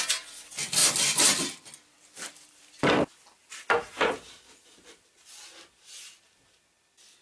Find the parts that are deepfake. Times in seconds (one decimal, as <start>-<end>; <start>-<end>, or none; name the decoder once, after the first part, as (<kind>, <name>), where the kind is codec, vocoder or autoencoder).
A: none